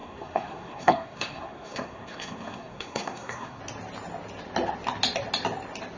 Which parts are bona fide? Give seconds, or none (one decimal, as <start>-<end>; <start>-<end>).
3.6-6.0